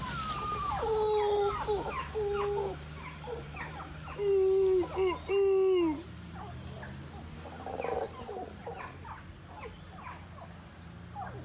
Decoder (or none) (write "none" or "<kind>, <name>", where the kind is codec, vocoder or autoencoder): none